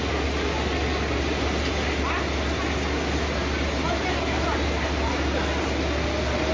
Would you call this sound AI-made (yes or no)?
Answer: no